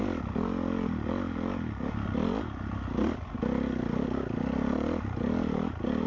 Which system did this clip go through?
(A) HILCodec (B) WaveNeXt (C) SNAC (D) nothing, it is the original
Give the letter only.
D